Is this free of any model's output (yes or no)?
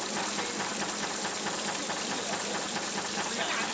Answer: yes